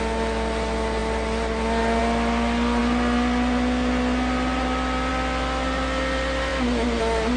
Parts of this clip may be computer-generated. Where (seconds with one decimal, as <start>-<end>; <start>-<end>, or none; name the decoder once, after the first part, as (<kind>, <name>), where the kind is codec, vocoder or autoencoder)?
none